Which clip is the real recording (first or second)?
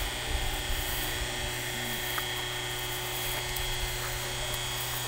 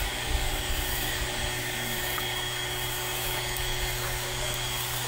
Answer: first